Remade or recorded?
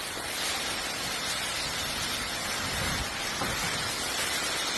recorded